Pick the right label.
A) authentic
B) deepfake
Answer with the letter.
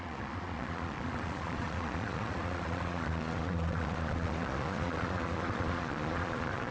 B